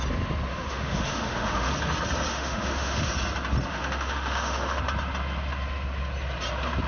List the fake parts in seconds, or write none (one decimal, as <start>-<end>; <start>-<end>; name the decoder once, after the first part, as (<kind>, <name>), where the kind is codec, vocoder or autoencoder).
0.5-1.7 (autoencoder, DAC-VAE); 2.3-3.1; 3.7-4.8